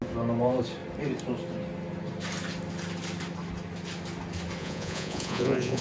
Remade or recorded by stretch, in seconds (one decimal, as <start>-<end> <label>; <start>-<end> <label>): 0.0-4.6 recorded; 4.6-5.8 remade